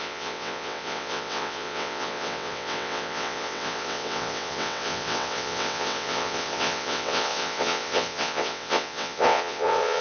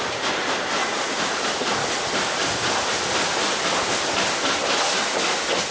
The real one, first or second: second